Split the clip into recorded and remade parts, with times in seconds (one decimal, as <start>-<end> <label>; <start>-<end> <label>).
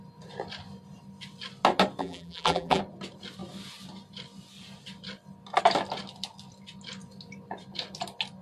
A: 0.0-2.0 recorded; 2.0-2.8 remade; 2.8-8.4 recorded